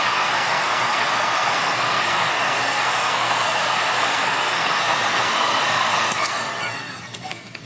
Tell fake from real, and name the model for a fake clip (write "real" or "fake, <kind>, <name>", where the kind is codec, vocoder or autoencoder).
fake, codec, SNAC